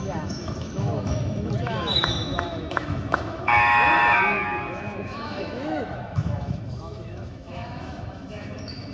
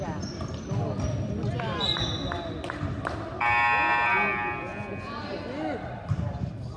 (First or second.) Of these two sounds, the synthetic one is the first